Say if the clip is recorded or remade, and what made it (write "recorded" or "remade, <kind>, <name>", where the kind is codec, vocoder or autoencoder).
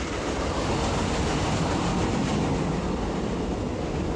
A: recorded